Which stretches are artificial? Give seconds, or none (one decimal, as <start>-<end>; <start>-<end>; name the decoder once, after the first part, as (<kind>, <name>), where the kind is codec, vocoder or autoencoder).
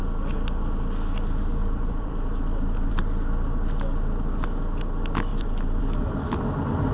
1.6-3.0 (vocoder, BigVGAN v2); 5.3-5.8